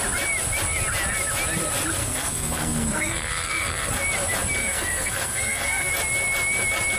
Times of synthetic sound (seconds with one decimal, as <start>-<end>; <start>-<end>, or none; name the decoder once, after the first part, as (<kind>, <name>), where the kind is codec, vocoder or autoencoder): 2.0-3.9 (codec, SNAC); 4.6-5.9